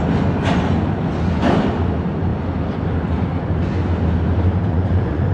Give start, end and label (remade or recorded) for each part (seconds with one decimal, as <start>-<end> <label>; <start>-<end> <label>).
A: 0.0-4.7 recorded; 4.7-5.3 remade